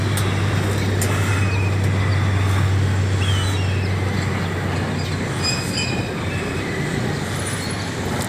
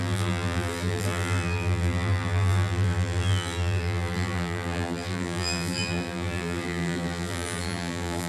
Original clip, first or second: first